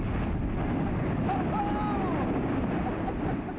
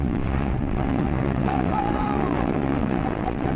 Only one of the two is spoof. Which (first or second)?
second